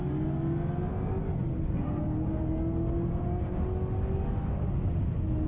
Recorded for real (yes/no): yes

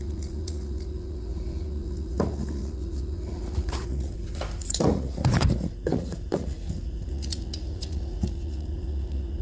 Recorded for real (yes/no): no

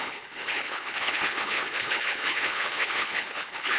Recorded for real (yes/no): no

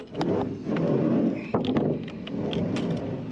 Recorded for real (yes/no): yes